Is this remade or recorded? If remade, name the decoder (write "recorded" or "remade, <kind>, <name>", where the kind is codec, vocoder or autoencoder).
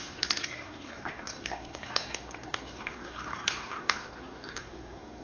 remade, codec, SNAC